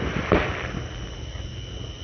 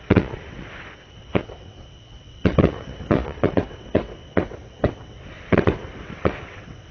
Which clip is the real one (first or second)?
first